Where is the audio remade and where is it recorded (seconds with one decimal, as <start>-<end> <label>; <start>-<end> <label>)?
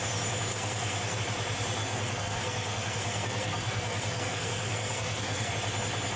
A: 0.0-0.5 recorded; 0.5-1.2 remade; 1.2-1.8 recorded; 1.8-5.5 remade; 5.5-6.2 recorded